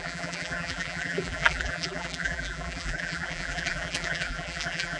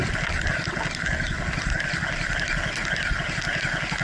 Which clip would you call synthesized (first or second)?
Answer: first